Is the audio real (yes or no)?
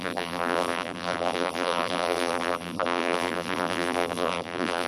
no